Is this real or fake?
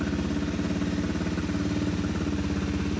real